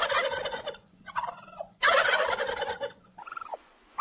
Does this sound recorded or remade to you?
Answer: remade